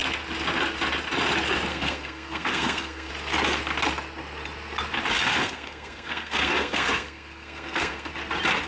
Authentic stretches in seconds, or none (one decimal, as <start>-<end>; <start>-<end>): 0.0-1.7; 3.1-5.3; 8.1-8.7